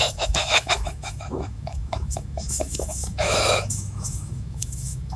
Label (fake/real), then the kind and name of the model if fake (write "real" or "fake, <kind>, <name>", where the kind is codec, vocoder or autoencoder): fake, autoencoder, DAC-VAE